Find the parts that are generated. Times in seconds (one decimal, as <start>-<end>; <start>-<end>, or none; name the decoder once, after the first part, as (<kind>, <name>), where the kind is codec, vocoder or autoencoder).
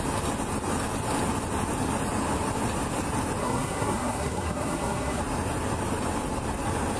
3.4-5.2 (codec, SNAC)